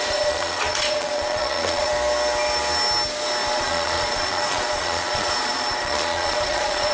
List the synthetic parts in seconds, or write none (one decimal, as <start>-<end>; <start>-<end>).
0.0-1.9; 3.5-6.9

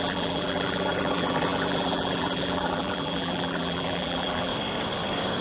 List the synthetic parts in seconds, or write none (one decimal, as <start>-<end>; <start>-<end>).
0.0-4.5

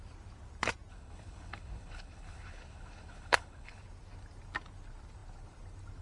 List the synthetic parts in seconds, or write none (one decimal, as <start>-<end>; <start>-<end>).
0.9-3.8

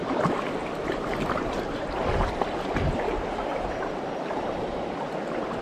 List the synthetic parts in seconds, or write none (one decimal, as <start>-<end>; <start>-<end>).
0.6-1.5; 3.5-5.0